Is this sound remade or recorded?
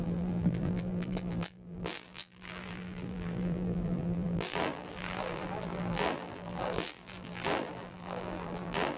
remade